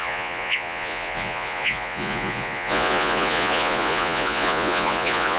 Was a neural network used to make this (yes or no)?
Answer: yes